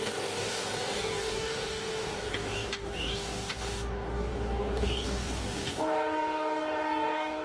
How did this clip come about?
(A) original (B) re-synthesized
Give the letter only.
B